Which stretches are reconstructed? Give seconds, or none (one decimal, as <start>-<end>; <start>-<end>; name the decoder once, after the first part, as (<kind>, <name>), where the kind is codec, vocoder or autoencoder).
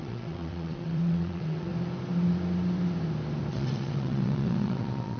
0.0-1.7 (vocoder, WaveNeXt); 3.5-5.2